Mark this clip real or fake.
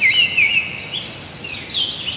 real